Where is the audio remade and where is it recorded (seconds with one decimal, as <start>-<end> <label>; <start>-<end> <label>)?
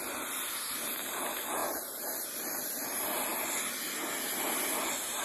0.0-1.6 recorded; 1.6-2.3 remade; 2.3-5.2 recorded